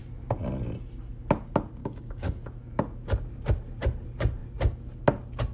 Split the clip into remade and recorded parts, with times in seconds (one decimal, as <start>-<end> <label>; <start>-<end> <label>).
0.0-1.8 recorded; 1.8-2.4 remade; 2.4-5.5 recorded